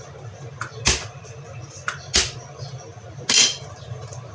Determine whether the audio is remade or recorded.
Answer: recorded